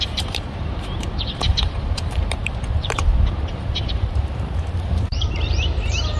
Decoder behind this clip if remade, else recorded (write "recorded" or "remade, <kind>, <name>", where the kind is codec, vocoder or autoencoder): remade, vocoder, BigVGAN v2